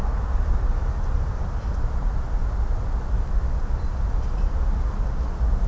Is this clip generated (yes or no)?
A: no